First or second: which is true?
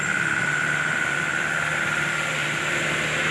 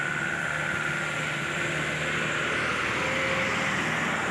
second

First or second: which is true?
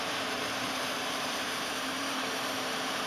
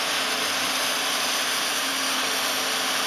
second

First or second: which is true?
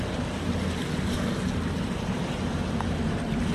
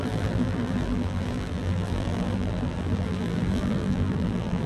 first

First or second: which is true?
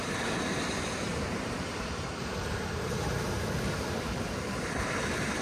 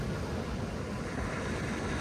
second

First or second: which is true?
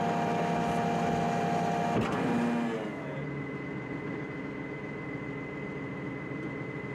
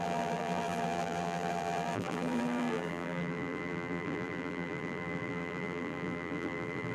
first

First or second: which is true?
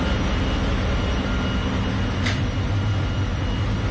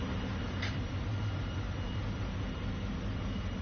first